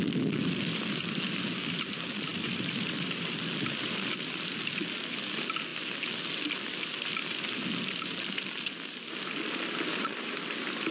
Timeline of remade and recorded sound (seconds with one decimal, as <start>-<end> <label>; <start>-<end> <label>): 0.0-2.3 recorded; 2.3-4.5 remade; 4.5-10.9 recorded